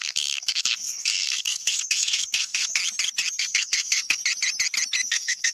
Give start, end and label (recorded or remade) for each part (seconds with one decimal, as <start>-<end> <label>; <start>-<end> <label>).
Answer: 0.0-2.8 remade; 2.8-3.4 recorded; 3.4-4.2 remade; 4.2-5.1 recorded; 5.1-5.5 remade